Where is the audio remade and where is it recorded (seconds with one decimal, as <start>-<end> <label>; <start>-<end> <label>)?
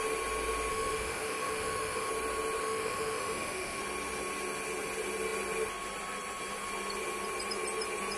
0.0-0.7 recorded; 0.7-2.1 remade; 2.1-2.6 recorded; 2.6-3.8 remade; 3.8-8.2 recorded